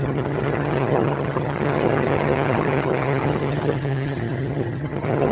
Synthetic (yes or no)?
yes